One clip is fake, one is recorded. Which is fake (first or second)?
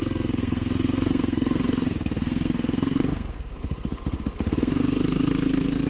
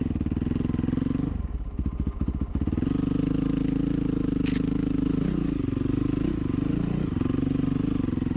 first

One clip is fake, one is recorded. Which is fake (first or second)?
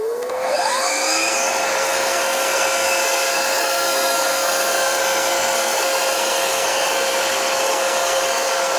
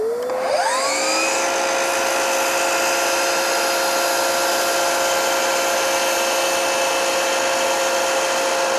first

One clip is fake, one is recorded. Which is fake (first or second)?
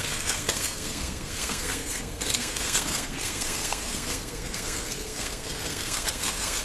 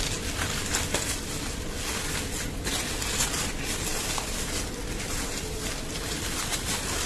first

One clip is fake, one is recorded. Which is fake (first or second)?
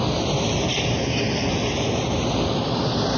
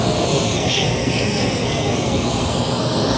second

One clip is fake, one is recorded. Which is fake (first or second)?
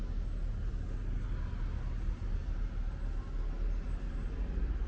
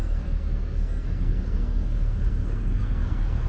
second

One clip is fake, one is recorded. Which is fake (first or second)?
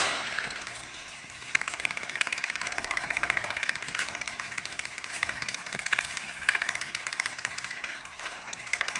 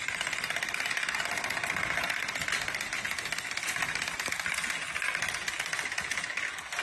first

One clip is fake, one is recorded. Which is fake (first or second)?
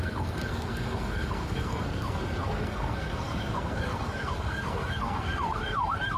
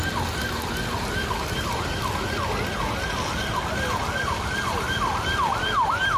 first